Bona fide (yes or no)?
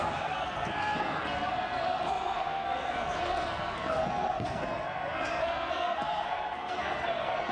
no